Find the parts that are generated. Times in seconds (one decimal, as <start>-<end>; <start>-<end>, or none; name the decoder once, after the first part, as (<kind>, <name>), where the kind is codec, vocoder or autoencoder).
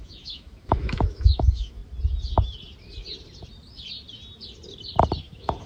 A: 0.0-1.8 (autoencoder, DAC-VAE); 5.2-5.7